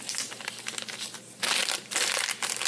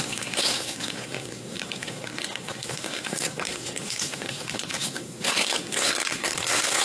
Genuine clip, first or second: first